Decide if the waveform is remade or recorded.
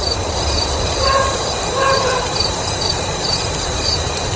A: remade